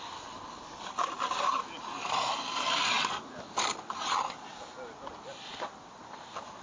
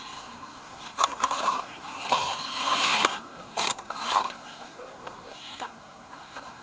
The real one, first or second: first